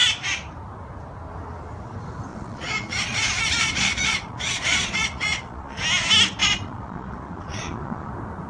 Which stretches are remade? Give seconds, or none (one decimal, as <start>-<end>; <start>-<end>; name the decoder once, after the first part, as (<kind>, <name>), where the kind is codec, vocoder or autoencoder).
2.3-5.8 (vocoder, Vocos); 6.4-8.1